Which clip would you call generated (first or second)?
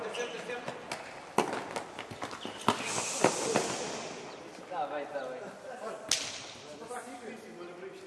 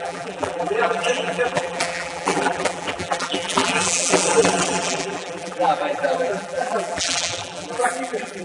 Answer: second